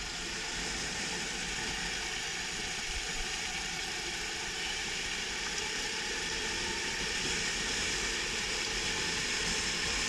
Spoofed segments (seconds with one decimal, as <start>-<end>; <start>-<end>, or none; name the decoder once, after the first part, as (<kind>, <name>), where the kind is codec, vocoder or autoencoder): 2.3-7.0 (vocoder, BigVGAN v2)